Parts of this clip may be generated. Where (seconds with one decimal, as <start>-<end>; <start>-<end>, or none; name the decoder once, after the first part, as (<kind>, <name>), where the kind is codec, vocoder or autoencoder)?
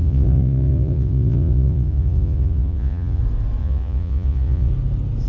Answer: 0.0-3.2 (vocoder, Vocos); 3.6-4.7